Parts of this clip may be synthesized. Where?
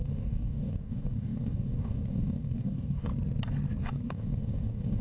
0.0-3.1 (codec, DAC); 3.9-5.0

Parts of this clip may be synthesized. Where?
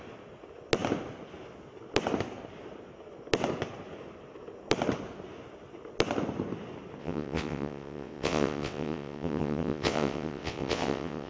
7.0-11.3 (vocoder, WaveNeXt)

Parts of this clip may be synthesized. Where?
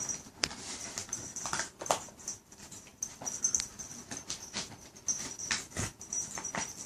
0.0-1.0 (vocoder, BigVGAN v2); 1.6-2.9; 5.9-6.9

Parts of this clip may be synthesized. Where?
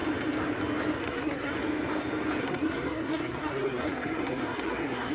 1.0-1.5 (codec, SNAC); 2.4-5.1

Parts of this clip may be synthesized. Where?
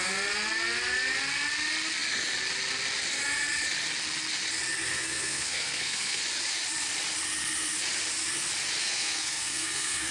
4.9-6.2 (codec, SNAC); 8.8-10.1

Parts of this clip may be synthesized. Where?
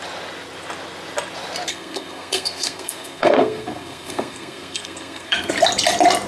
1.7-5.5 (codec, SNAC)